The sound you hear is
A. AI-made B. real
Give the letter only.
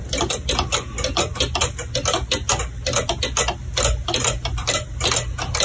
B